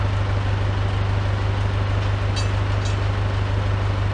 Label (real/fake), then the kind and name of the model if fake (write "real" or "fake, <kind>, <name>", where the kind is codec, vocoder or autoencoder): real